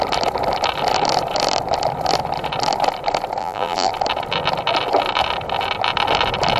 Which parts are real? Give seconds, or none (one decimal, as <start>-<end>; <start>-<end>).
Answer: 0.0-3.4; 3.9-6.6